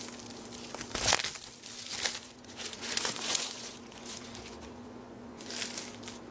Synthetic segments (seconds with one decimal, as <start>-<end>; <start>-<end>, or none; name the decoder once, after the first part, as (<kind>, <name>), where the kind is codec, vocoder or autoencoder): 2.1-5.5 (vocoder, Vocos)